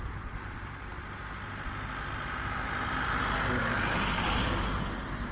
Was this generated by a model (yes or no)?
no